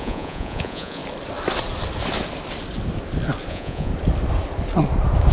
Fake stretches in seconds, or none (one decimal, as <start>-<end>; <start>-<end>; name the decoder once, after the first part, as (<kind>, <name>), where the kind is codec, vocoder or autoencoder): 0.0-1.0 (vocoder, Vocos); 3.5-3.9